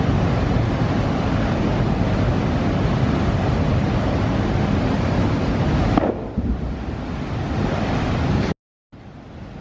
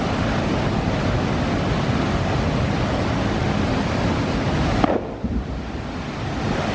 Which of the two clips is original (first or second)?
first